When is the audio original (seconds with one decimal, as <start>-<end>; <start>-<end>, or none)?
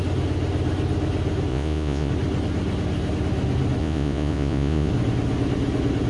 0.0-1.5; 2.1-3.8; 4.9-6.1